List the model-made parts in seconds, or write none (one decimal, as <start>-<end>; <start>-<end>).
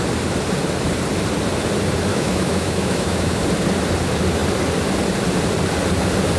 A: 2.1-3.4